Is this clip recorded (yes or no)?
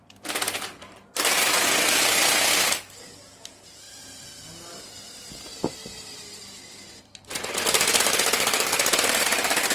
yes